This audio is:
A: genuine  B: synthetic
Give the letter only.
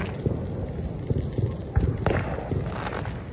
A